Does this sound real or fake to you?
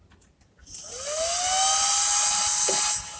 real